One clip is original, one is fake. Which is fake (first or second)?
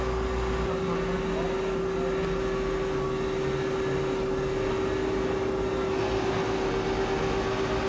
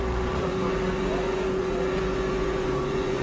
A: second